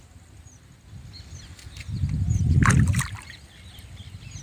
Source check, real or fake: real